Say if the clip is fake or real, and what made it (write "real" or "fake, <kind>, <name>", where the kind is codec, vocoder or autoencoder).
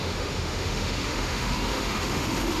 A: fake, autoencoder, DAC-VAE